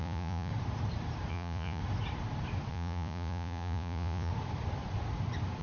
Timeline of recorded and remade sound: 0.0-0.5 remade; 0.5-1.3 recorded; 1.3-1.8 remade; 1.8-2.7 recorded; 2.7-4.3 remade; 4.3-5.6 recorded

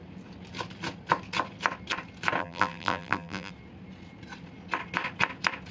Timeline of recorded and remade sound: 0.0-2.4 recorded; 2.4-3.5 remade; 3.5-5.7 recorded